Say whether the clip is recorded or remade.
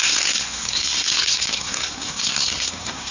remade